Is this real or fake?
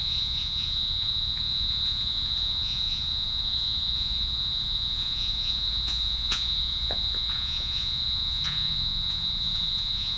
fake